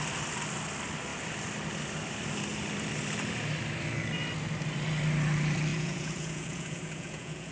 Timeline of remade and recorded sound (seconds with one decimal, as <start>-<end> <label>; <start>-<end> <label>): 0.0-5.7 recorded; 5.7-7.5 remade